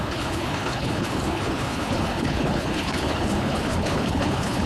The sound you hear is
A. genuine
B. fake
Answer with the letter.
B